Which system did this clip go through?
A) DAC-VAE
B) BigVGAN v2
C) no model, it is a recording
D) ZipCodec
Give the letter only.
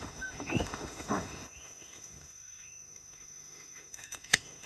A